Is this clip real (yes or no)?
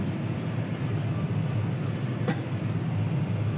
yes